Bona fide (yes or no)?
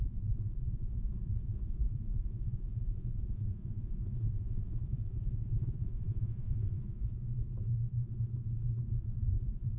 no